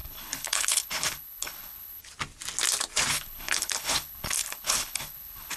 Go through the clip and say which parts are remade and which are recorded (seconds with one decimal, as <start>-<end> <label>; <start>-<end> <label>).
0.0-2.0 remade; 2.0-3.1 recorded; 3.1-5.6 remade